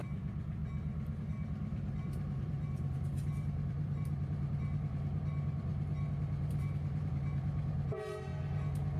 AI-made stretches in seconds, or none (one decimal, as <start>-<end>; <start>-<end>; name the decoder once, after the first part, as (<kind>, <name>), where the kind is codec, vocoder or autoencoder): 0.0-0.6 (vocoder, BigVGAN v2); 1.2-8.3

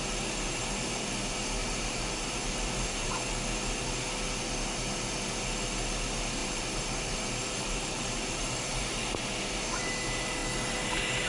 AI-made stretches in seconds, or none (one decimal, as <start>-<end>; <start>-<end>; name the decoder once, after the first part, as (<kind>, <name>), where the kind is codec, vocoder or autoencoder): 1.6-3.1 (vocoder, BigVGAN v2); 6.4-9.2

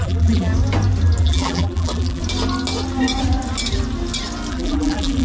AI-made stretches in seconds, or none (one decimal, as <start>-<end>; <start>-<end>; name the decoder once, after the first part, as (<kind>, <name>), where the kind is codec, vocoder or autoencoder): 0.0-0.5 (vocoder, BigVGAN v2); 1.2-2.2; 4.5-5.2

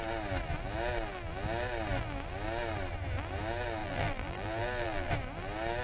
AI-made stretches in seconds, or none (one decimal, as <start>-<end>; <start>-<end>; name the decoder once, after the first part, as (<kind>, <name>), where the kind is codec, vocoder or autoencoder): 3.8-5.1 (vocoder, BigVGAN v2)

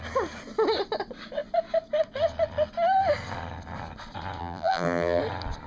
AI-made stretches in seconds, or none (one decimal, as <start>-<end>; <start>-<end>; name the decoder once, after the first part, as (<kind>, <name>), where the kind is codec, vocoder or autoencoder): 4.4-5.2 (vocoder, BigVGAN v2)

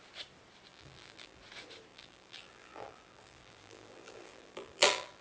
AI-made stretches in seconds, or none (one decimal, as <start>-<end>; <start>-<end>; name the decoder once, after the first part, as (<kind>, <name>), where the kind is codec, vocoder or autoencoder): 0.7-1.4 (vocoder, BigVGAN v2); 1.9-5.2